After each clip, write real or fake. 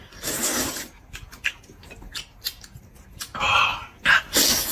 real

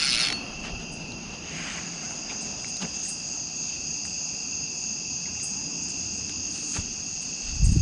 real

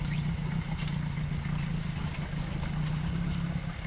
real